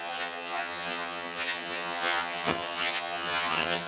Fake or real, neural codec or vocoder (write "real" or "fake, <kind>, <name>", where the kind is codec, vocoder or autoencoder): fake, vocoder, HiFi-GAN